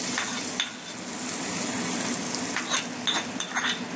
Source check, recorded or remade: recorded